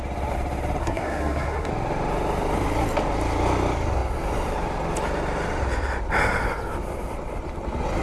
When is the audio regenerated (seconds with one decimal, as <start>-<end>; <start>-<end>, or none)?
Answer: 0.8-1.7